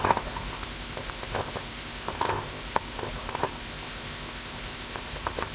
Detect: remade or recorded remade